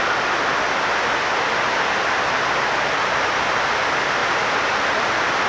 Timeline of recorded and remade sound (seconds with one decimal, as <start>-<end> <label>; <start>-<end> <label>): 0.0-5.5 recorded

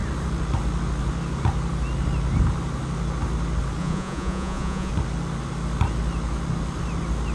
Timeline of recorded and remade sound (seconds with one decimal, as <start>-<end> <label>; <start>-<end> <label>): 0.0-3.8 recorded; 3.8-4.9 remade; 4.9-7.3 recorded

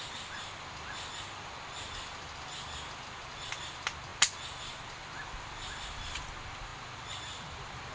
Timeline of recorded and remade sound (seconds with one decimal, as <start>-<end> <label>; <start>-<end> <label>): 0.0-7.9 recorded

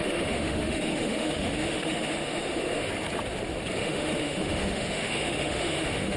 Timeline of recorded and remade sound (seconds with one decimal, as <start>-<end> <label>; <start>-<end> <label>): 0.0-2.9 remade; 2.9-3.8 recorded; 3.8-6.2 remade

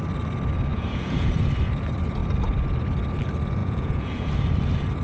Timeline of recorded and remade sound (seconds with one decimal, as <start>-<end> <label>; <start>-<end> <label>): 0.0-0.7 recorded; 0.7-1.3 remade; 1.3-3.6 recorded; 3.6-4.3 remade; 4.3-5.0 recorded

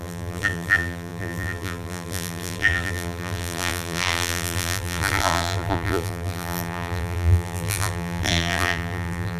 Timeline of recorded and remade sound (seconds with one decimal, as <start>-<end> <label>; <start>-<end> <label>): 0.0-9.4 remade

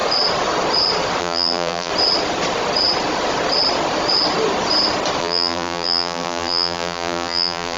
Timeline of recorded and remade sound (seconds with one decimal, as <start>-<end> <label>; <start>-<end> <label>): 0.0-1.2 recorded; 1.2-1.9 remade; 1.9-5.2 recorded; 5.2-7.8 remade

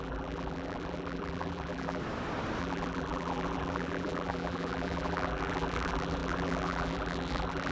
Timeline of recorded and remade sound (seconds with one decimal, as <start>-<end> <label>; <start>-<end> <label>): 0.0-2.0 remade; 2.0-2.6 recorded; 2.6-7.7 remade